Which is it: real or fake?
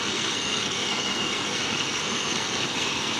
fake